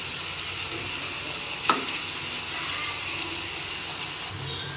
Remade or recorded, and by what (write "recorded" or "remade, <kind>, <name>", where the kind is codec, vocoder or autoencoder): recorded